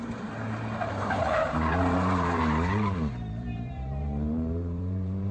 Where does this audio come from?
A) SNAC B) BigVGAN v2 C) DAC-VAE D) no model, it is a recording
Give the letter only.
B